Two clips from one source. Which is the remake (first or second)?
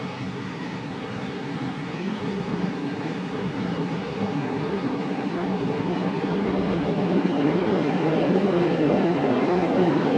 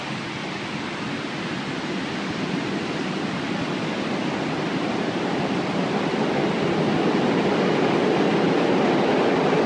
first